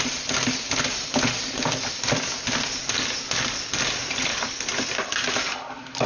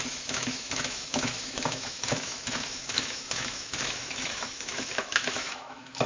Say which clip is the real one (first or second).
first